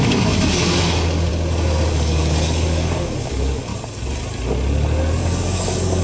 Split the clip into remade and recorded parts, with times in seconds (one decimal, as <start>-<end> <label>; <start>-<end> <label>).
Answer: 0.0-1.3 remade; 1.3-1.9 recorded; 1.9-3.7 remade; 3.7-5.2 recorded; 5.2-6.0 remade